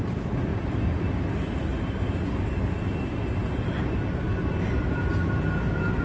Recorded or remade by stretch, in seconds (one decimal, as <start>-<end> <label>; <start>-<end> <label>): 0.0-6.0 recorded